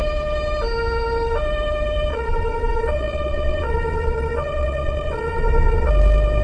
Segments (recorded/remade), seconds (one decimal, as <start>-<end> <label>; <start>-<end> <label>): 0.0-2.1 recorded; 2.1-5.9 remade; 5.9-6.4 recorded